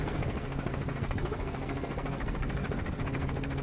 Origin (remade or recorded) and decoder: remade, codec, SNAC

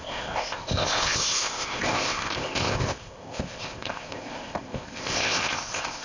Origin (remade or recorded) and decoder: remade, codec, ZipCodec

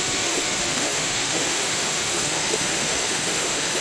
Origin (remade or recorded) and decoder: remade, autoencoder, DAC-VAE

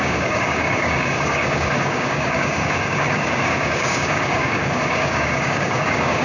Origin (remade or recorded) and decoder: remade, codec, DAC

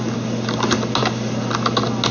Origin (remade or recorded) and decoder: recorded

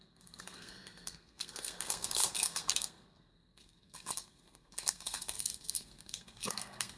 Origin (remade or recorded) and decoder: remade, codec, SNAC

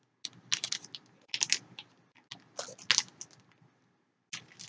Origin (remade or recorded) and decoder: recorded